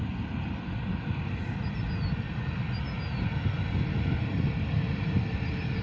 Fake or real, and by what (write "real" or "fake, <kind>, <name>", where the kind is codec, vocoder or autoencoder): real